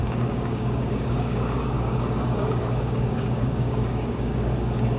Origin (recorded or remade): remade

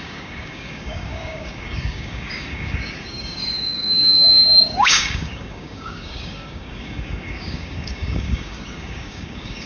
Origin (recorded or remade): remade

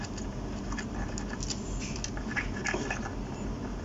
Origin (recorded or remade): recorded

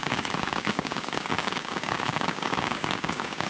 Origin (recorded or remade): remade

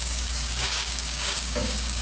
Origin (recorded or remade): remade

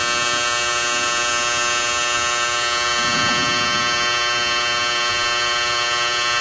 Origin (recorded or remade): recorded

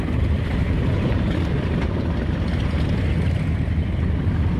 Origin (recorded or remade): recorded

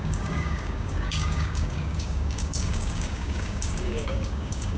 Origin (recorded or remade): remade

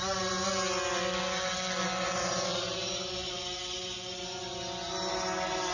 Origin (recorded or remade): recorded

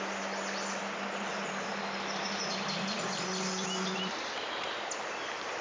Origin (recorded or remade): recorded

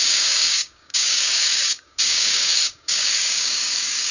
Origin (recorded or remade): remade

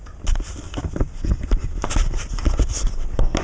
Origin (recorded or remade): recorded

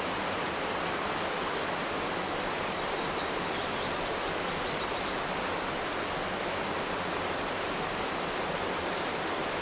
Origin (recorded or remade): recorded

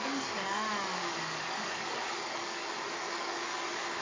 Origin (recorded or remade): remade